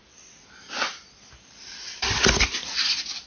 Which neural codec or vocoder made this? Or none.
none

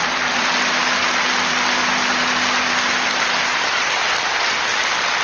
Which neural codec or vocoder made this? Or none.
none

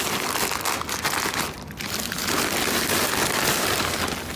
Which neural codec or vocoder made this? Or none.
none